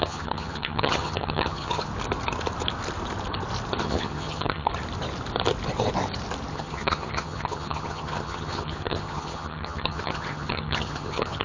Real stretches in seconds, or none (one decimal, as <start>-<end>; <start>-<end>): 1.9-3.8; 4.7-6.5

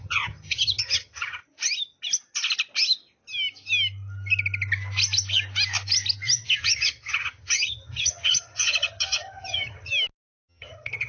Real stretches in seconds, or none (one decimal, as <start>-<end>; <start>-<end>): 1.4-6.6; 9.9-10.5

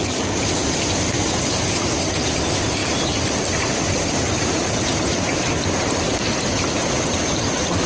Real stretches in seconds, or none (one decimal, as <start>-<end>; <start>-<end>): 0.0-7.9

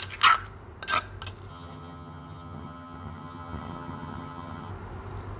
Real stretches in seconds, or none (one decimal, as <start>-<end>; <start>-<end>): 0.0-1.5; 4.7-5.4